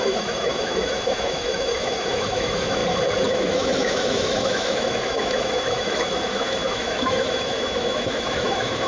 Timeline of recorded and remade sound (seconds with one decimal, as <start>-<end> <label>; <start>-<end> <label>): 0.0-2.8 remade; 2.8-3.3 recorded; 3.3-8.9 remade